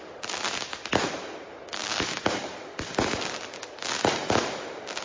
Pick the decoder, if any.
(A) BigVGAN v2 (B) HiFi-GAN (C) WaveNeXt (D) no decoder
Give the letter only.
D